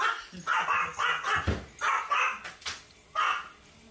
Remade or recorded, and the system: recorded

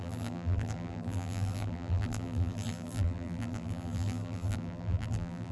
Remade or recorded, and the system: remade, vocoder, BigVGAN v2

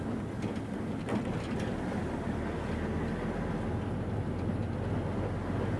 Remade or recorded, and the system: recorded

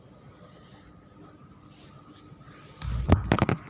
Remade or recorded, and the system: remade, vocoder, BigVGAN v2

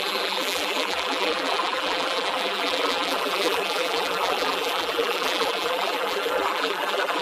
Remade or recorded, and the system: remade, vocoder, BigVGAN v2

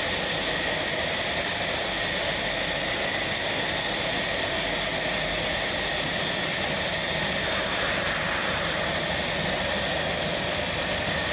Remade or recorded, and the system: recorded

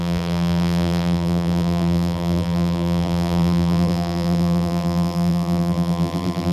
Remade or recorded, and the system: remade, vocoder, BigVGAN v2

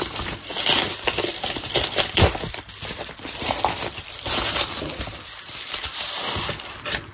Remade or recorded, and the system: remade, vocoder, BigVGAN v2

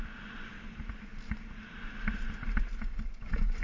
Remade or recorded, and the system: recorded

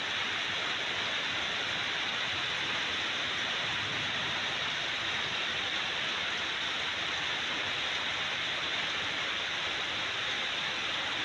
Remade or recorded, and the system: remade, vocoder, BigVGAN v2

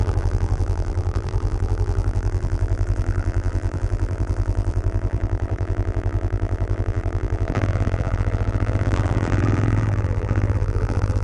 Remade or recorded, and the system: remade, vocoder, BigVGAN v2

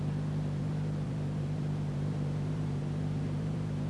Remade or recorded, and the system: remade, vocoder, BigVGAN v2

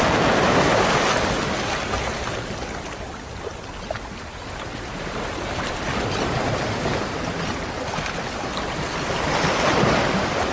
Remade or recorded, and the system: recorded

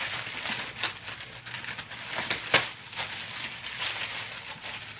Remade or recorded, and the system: recorded